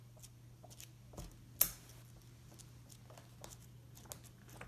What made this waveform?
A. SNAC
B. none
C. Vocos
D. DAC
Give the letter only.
B